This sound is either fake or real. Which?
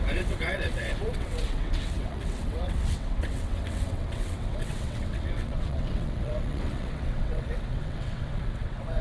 fake